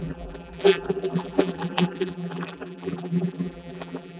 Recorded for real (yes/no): no